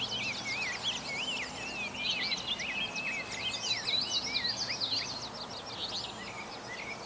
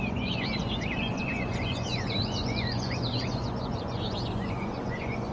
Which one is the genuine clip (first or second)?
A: first